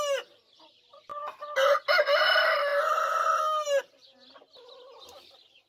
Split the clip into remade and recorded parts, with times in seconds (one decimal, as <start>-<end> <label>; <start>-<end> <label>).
0.0-5.7 recorded